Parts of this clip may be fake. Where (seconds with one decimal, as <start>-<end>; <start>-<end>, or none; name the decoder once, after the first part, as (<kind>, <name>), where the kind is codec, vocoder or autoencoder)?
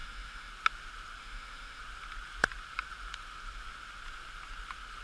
0.0-0.5 (autoencoder, DAC-VAE); 1.2-1.8